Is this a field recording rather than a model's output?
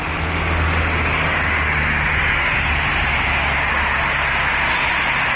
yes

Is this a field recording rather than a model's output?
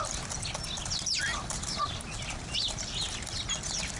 yes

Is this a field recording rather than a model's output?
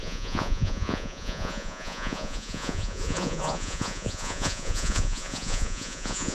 no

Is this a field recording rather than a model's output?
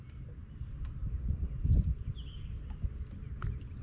yes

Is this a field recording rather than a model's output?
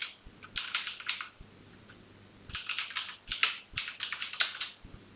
yes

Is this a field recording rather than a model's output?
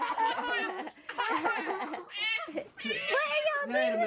yes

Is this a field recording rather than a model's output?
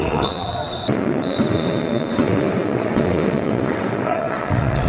no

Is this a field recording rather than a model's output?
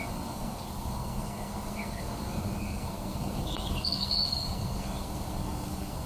no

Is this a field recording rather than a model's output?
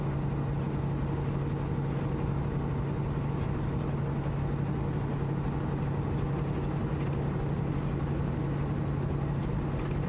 yes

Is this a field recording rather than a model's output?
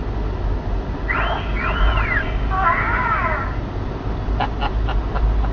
yes